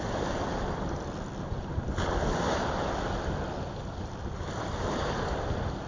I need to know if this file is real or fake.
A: real